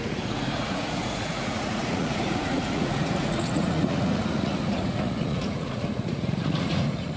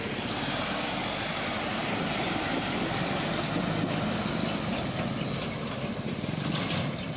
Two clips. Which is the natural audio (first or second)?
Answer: second